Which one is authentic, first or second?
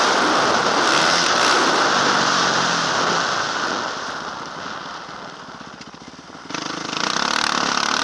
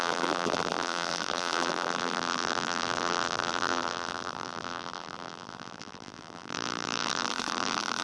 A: first